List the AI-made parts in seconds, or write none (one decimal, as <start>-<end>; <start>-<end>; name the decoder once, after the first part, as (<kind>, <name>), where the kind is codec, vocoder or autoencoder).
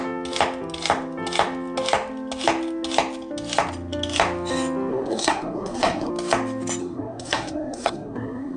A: 4.9-6.1 (codec, SNAC); 6.8-8.6